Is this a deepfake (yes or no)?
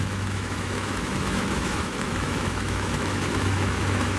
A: yes